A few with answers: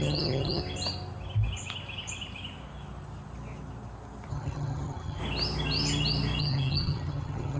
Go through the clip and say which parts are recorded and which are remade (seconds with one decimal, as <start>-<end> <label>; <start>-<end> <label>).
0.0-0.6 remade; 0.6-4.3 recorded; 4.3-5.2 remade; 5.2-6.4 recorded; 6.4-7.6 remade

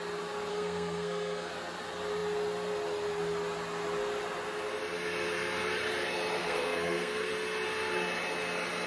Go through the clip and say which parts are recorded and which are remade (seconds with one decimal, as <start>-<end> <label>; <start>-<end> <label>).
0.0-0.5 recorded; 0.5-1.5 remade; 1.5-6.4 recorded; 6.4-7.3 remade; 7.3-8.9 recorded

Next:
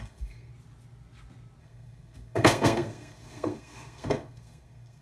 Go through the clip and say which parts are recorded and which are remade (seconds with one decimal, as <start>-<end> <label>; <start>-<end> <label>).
0.0-0.5 remade; 0.5-1.6 recorded; 1.6-5.0 remade

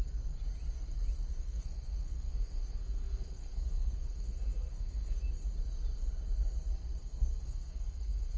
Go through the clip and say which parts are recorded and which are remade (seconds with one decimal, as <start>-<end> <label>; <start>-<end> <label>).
0.0-1.3 recorded; 1.3-5.2 remade; 5.2-7.0 recorded; 7.0-8.4 remade

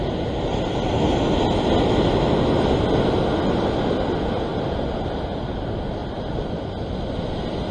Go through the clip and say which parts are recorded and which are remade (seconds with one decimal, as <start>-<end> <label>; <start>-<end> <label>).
0.0-7.7 recorded

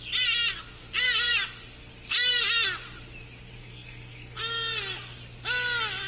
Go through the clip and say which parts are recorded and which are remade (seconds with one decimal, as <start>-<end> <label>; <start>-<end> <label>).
0.0-3.6 recorded; 3.6-4.4 remade; 4.4-6.1 recorded

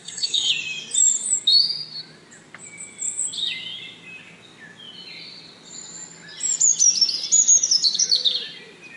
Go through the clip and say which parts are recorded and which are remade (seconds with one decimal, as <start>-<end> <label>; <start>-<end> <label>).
0.0-0.5 remade; 0.5-9.0 recorded